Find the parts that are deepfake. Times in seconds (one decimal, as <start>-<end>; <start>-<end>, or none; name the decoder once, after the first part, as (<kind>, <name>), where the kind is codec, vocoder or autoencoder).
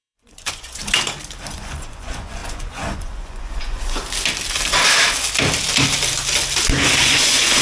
0.0-0.8 (vocoder, Vocos); 1.5-4.0; 7.0-7.6